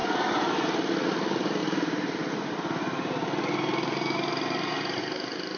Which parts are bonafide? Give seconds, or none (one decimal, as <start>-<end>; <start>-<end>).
0.0-5.6